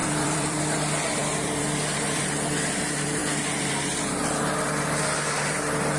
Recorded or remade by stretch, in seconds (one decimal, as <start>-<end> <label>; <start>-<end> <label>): 0.0-0.6 remade; 0.6-1.2 recorded; 1.2-2.2 remade; 2.2-6.0 recorded